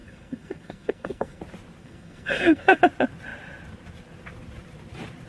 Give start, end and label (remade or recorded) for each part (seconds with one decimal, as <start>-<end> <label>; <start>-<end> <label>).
0.0-1.4 remade; 1.4-1.8 recorded; 1.8-2.8 remade; 2.8-5.3 recorded